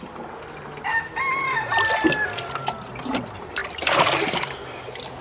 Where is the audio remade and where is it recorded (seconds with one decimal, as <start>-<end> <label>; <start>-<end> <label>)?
0.0-5.2 recorded